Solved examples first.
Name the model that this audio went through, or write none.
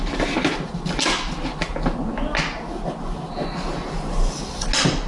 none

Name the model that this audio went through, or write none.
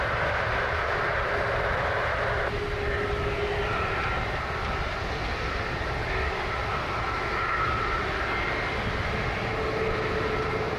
none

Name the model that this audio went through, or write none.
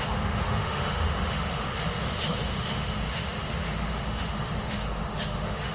autoencoder, DAC-VAE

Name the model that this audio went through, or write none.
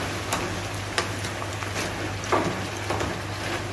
none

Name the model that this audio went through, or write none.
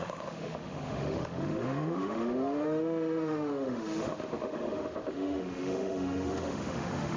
autoencoder, DAC-VAE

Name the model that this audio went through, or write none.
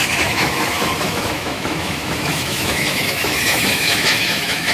autoencoder, DAC-VAE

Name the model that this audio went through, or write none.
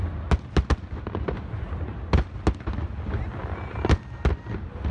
none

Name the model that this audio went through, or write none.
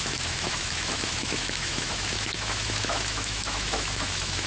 autoencoder, DAC-VAE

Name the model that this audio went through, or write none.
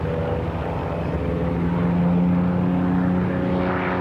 none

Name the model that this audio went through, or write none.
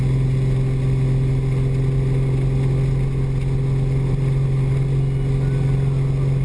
none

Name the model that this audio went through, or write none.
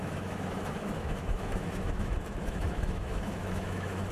autoencoder, DAC-VAE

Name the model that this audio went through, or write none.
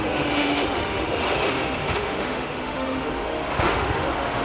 autoencoder, DAC-VAE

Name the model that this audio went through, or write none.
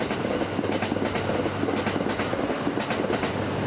none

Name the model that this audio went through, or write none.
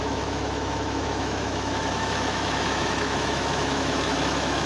autoencoder, DAC-VAE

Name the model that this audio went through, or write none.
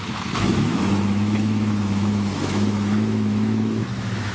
autoencoder, DAC-VAE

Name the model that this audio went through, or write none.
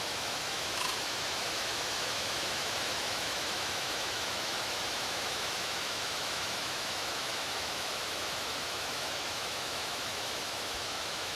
autoencoder, DAC-VAE